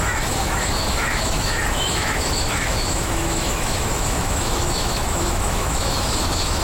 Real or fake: fake